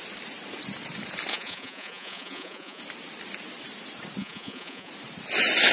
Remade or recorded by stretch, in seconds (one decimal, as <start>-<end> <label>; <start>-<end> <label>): 0.0-1.3 recorded; 1.3-2.8 remade; 2.8-4.2 recorded; 4.2-4.9 remade; 4.9-5.7 recorded